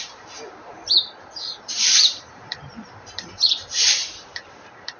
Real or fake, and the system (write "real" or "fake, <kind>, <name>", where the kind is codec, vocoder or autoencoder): fake, vocoder, BigVGAN v2